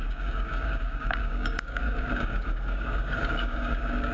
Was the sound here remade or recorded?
remade